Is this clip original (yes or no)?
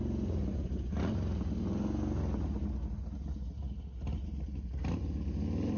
yes